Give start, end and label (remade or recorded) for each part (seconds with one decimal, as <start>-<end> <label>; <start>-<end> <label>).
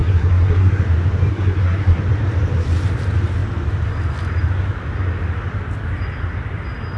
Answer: 0.0-0.8 remade; 0.8-1.3 recorded; 1.3-2.0 remade; 2.0-7.0 recorded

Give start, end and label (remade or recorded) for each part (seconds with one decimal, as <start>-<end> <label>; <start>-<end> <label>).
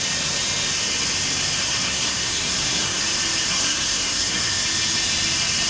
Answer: 0.0-1.6 recorded; 1.6-3.0 remade; 3.0-3.5 recorded; 3.5-4.5 remade; 4.5-5.7 recorded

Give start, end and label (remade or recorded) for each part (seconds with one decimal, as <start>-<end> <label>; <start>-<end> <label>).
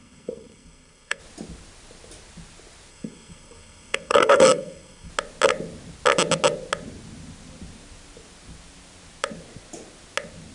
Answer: 0.0-1.2 remade; 1.2-2.9 recorded; 2.9-5.1 remade; 5.1-10.5 recorded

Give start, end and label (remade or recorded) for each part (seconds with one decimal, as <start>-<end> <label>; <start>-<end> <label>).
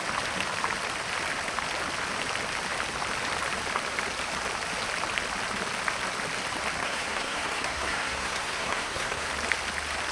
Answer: 0.0-6.8 recorded; 6.8-9.3 remade; 9.3-10.1 recorded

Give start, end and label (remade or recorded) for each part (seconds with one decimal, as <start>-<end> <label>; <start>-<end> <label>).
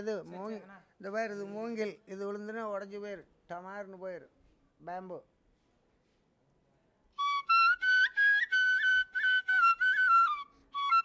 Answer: 0.0-11.0 recorded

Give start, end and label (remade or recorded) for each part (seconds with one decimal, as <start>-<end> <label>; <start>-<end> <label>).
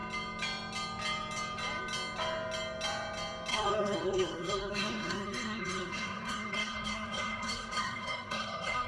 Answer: 0.0-3.5 recorded; 3.5-8.9 remade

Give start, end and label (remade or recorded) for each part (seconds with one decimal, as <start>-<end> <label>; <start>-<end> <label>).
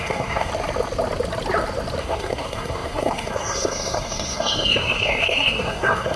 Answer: 0.0-0.5 remade; 0.5-2.0 recorded; 2.0-6.2 remade